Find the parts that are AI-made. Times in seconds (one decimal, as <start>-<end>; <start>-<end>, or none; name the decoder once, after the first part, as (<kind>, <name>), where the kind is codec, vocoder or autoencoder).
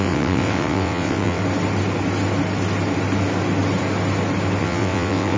0.0-1.4 (vocoder, WaveNeXt); 4.6-5.4